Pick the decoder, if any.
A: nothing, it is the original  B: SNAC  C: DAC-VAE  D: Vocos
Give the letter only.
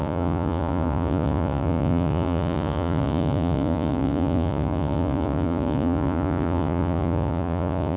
D